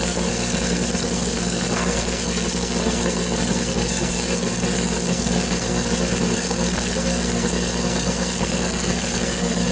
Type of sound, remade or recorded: remade